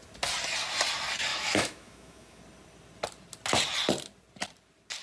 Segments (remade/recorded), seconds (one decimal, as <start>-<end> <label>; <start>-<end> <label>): 0.0-1.3 recorded; 1.3-2.4 remade; 2.4-5.0 recorded